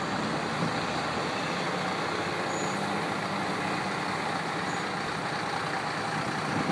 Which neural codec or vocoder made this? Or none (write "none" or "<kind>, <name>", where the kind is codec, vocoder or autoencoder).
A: none